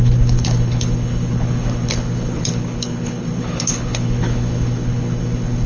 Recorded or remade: remade